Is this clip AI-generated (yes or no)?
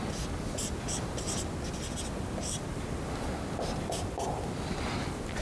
no